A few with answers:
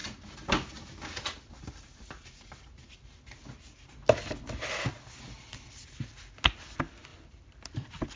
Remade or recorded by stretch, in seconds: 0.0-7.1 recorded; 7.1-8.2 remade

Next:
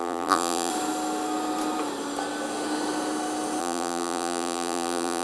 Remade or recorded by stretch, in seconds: 0.0-0.7 remade; 0.7-3.6 recorded; 3.6-5.2 remade

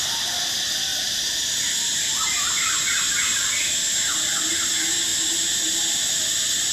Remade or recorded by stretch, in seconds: 0.0-0.9 recorded; 0.9-2.5 remade; 2.5-6.7 recorded